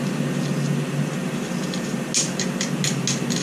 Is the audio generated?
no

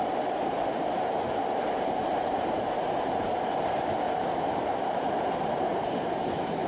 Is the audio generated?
yes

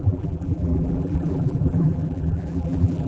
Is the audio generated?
yes